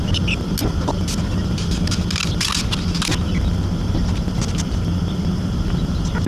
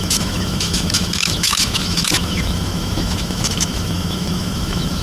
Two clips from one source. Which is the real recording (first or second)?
first